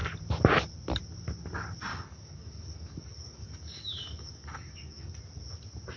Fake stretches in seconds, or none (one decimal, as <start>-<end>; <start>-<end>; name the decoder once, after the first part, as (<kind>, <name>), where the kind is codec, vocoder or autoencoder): 1.9-5.2 (codec, DAC)